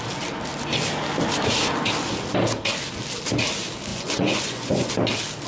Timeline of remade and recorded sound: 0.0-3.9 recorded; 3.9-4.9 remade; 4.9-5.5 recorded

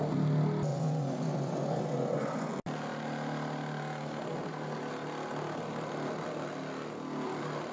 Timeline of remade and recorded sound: 0.0-0.7 recorded; 0.7-2.5 remade; 2.5-7.7 recorded

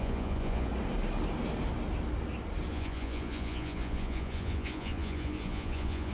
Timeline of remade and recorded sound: 0.0-0.7 remade; 0.7-2.7 recorded; 2.7-6.1 remade

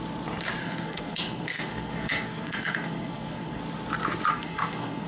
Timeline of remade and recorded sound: 0.0-0.6 recorded; 0.6-3.6 remade; 3.6-4.3 recorded; 4.3-5.1 remade

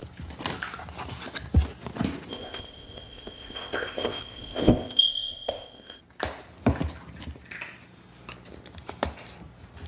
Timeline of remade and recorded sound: 0.0-2.3 recorded; 2.3-6.0 remade; 6.0-9.9 recorded

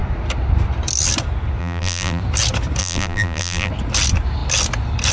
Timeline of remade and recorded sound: 0.0-1.6 recorded; 1.6-2.2 remade; 2.2-2.8 recorded; 2.8-3.7 remade; 3.7-5.1 recorded

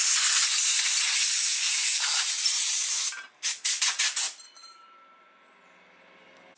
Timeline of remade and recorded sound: 0.0-1.5 recorded; 1.5-3.8 remade; 3.8-6.6 recorded

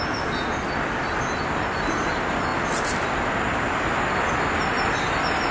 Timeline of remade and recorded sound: 0.0-5.5 recorded